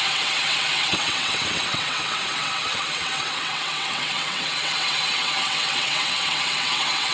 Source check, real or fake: fake